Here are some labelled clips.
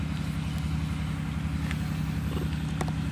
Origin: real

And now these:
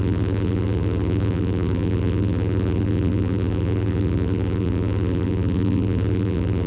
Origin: fake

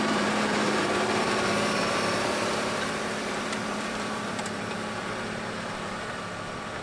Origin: fake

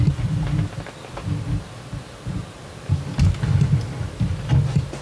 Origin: real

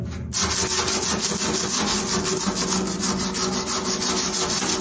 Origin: real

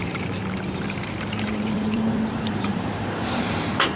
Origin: fake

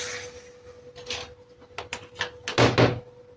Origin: real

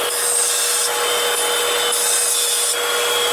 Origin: real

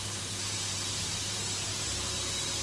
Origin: fake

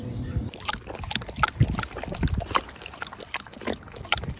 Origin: fake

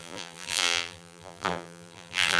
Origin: fake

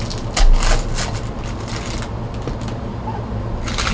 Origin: real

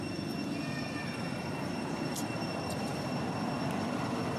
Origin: real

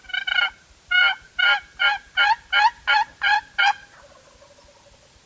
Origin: real